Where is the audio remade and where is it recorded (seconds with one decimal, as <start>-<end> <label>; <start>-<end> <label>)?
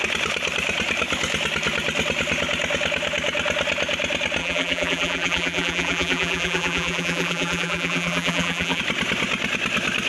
0.0-4.4 recorded; 4.4-8.8 remade; 8.8-10.1 recorded